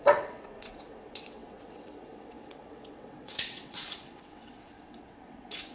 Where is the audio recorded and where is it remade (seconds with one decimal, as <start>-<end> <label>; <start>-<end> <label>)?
0.0-5.7 remade